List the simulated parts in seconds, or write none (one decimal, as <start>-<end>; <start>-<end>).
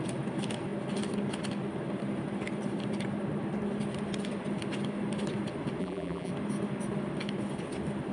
5.8-6.3